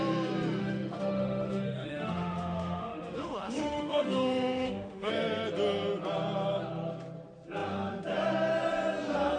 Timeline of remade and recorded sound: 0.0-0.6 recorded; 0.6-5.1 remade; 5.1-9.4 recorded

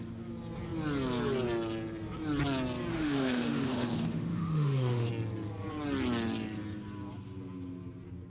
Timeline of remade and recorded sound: 0.0-2.9 recorded; 2.9-5.1 remade; 5.1-8.3 recorded